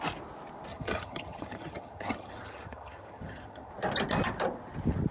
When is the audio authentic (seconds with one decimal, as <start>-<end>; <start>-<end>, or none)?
0.0-0.7; 3.7-5.1

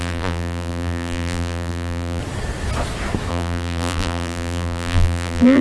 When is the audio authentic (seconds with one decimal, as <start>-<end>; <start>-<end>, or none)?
2.2-3.3

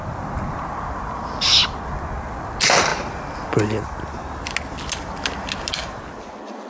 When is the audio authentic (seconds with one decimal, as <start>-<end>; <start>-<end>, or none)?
0.0-6.7

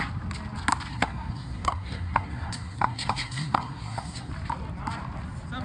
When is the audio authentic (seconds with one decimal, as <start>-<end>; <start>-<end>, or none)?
0.0-0.9; 4.3-5.6